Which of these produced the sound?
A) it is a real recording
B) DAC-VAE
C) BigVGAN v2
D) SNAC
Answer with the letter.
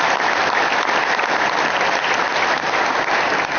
A